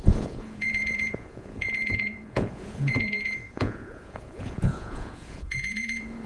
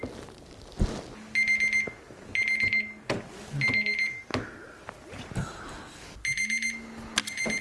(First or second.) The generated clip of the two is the first